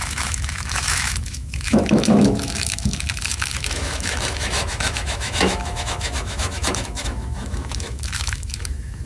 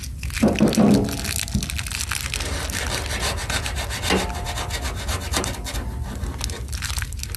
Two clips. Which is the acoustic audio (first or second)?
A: second